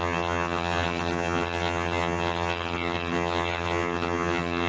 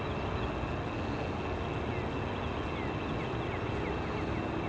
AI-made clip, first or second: first